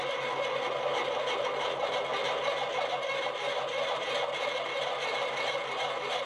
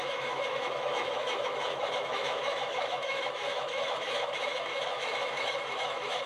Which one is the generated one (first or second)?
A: second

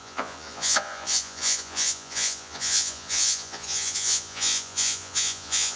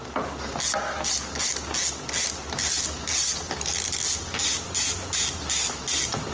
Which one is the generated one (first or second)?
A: first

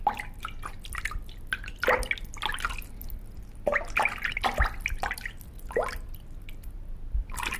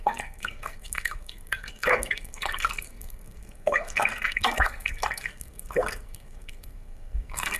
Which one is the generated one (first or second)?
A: second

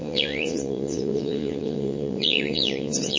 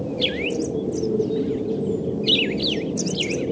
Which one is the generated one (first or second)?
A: first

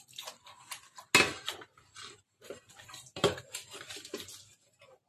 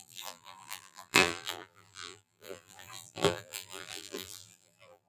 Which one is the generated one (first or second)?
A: second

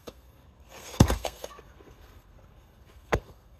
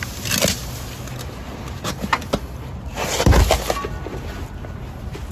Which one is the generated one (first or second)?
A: first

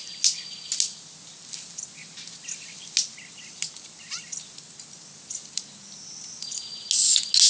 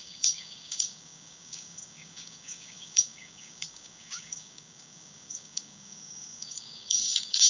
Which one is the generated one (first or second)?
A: second